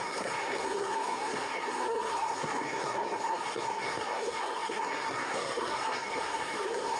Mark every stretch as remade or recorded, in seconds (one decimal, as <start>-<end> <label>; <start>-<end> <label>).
0.0-7.0 remade